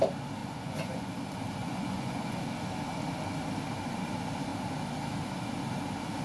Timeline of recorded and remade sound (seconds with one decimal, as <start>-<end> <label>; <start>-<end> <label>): 0.0-0.4 recorded; 0.4-1.1 remade; 1.1-1.6 recorded; 1.6-2.4 remade; 2.4-6.2 recorded